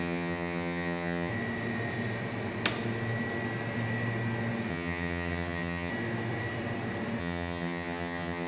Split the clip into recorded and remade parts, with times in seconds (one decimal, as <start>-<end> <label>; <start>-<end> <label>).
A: 0.0-1.3 remade; 1.3-4.7 recorded; 4.7-5.9 remade; 5.9-7.2 recorded; 7.2-8.5 remade